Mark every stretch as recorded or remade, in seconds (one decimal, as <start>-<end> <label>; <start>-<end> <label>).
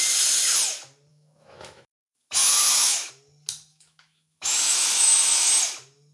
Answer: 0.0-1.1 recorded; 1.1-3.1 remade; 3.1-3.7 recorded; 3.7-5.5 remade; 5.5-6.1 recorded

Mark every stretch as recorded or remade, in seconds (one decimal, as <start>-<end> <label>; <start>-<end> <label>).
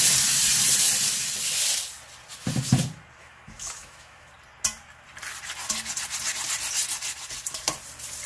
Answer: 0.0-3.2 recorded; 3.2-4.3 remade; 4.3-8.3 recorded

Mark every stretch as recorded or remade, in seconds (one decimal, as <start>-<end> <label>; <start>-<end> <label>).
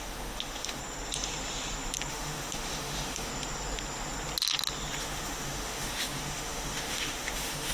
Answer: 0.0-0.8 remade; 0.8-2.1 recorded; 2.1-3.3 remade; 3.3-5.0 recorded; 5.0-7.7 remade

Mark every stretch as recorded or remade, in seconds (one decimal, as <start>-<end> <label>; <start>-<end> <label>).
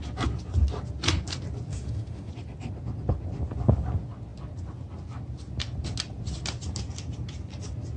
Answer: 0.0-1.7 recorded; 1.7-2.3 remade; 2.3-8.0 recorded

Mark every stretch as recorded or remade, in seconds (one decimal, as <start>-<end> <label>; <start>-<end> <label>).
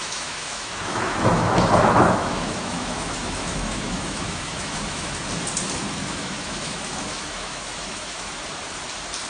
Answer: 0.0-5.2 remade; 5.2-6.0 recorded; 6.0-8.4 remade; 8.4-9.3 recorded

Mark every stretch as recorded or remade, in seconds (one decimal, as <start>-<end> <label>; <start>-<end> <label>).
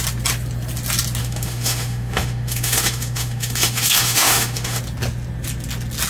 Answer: 0.0-1.2 recorded; 1.2-4.8 remade; 4.8-6.1 recorded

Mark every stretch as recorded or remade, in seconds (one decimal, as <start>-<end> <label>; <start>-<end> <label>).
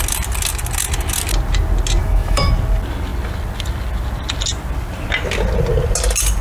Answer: 0.0-2.0 recorded; 2.0-2.5 remade; 2.5-6.4 recorded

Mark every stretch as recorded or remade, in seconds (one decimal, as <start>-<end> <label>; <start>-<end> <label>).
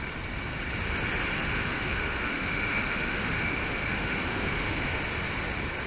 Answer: 0.0-1.5 recorded; 1.5-5.0 remade; 5.0-5.9 recorded